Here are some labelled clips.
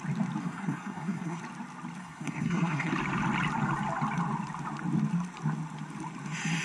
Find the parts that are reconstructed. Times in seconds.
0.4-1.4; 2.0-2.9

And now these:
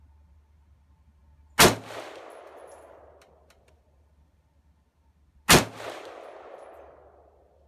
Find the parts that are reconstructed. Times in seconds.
none

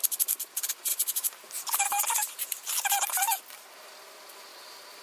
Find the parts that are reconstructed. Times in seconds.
0.9-3.4

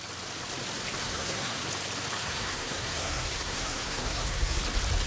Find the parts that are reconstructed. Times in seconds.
1.0-1.6; 2.2-4.6

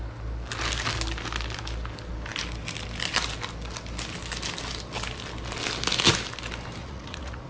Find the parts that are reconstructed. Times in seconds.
6.8-7.5

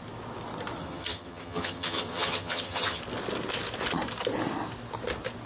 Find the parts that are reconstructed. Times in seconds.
0.8-3.0